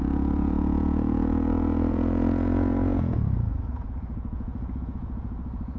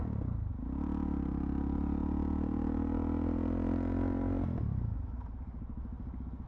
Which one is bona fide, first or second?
second